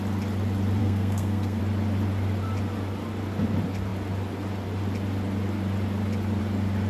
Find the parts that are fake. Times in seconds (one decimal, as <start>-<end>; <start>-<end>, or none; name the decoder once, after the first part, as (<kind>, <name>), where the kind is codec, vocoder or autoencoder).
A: 0.8-1.6 (codec, SNAC)